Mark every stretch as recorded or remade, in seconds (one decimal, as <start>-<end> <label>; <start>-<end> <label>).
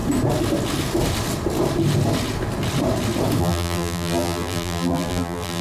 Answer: 0.0-3.4 recorded; 3.4-5.6 remade